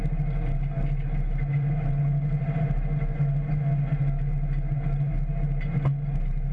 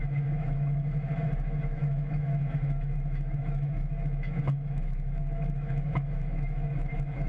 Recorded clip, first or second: first